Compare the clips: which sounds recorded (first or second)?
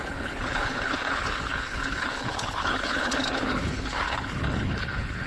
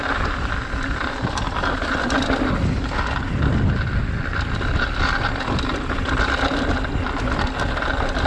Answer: second